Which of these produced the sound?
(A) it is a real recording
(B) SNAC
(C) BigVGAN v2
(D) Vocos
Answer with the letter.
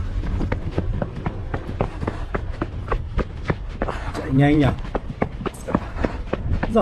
C